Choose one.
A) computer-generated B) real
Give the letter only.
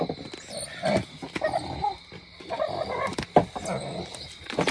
B